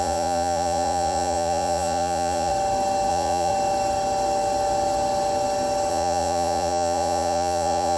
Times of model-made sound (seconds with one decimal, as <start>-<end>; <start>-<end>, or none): 0.0-2.5; 3.1-3.5; 5.9-8.0